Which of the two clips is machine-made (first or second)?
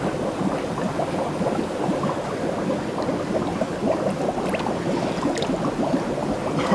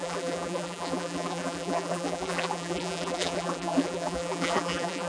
second